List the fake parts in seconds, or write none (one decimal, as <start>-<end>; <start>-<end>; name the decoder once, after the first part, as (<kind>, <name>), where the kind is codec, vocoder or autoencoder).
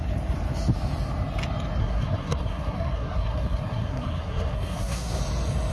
1.8-5.2 (codec, SNAC)